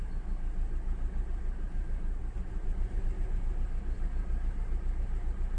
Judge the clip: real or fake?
real